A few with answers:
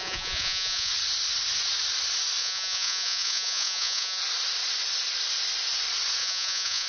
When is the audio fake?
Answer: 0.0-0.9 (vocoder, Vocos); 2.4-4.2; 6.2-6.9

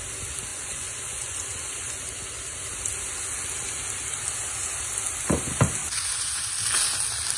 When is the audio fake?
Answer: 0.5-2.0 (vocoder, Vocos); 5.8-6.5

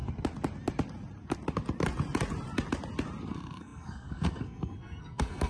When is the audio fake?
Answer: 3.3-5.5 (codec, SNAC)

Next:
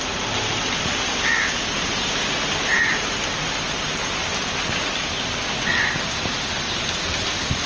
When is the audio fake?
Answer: none